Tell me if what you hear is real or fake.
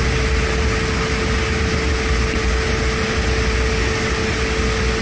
real